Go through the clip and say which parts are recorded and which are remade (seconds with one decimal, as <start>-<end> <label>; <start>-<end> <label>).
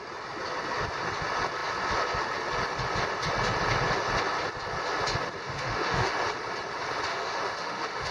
0.0-5.4 recorded; 5.4-6.1 remade; 6.1-7.1 recorded; 7.1-8.1 remade